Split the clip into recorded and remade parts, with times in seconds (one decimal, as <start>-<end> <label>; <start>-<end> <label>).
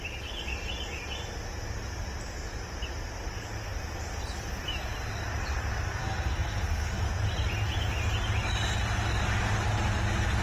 0.0-6.0 recorded; 6.0-7.1 remade; 7.1-10.4 recorded